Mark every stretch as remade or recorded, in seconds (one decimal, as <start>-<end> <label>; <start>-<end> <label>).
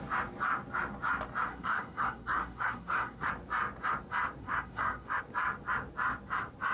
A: 0.0-1.5 recorded; 1.5-3.3 remade; 3.3-4.4 recorded; 4.4-5.2 remade; 5.2-6.7 recorded